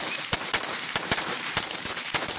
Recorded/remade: recorded